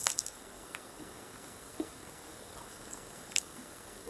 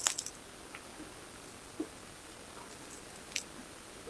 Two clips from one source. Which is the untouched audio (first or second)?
second